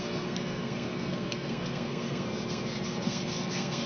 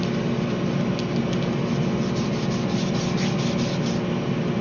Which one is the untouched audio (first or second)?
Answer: second